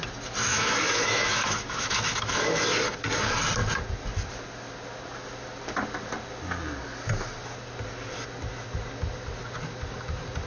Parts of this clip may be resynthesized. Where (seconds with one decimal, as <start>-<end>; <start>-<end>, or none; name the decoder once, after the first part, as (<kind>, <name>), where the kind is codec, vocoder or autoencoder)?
0.5-2.6 (autoencoder, DAC-VAE)

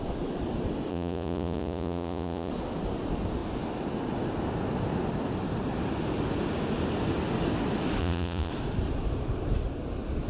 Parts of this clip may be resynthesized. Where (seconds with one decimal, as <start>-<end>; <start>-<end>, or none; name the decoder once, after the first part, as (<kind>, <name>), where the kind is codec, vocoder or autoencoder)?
0.9-2.5 (vocoder, Vocos); 8.0-8.5